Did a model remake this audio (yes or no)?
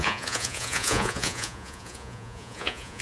yes